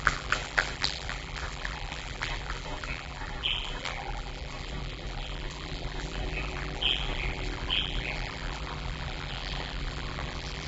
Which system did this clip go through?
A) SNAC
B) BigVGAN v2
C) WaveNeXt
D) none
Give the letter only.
B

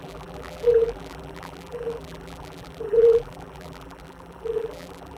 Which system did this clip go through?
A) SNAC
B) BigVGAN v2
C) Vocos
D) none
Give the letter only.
B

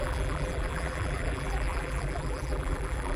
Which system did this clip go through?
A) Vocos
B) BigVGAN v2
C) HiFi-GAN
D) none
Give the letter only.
B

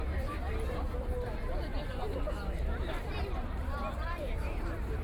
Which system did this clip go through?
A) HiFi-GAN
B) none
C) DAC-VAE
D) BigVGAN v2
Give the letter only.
D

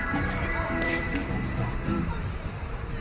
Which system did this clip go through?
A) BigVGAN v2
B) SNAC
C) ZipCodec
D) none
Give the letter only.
A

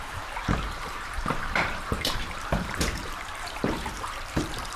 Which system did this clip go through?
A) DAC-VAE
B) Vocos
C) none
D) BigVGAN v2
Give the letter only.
D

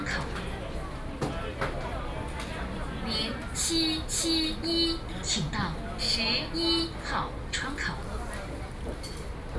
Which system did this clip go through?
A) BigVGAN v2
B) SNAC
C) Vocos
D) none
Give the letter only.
D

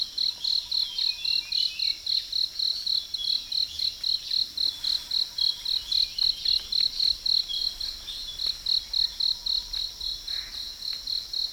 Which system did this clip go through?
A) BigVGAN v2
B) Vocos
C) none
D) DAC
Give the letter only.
C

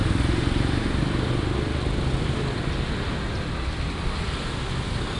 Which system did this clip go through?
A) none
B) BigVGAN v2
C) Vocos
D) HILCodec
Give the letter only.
A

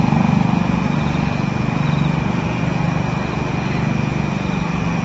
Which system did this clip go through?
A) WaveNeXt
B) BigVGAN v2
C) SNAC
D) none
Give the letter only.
D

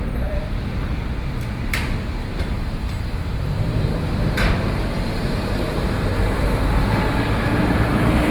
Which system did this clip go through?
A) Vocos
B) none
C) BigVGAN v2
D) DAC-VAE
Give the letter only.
C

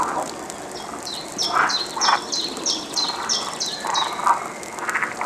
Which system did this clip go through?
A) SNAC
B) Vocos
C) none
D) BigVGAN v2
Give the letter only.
C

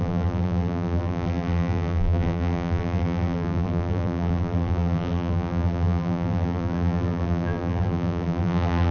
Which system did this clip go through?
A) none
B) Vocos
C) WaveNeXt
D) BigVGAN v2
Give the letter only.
D